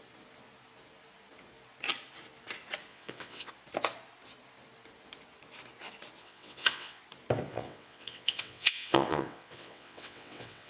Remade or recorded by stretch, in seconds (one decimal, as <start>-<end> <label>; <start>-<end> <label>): 0.0-2.9 recorded; 2.9-3.5 remade; 3.5-6.2 recorded; 6.2-7.0 remade; 7.0-7.5 recorded; 7.5-10.7 remade